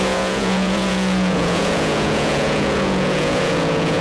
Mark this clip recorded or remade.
remade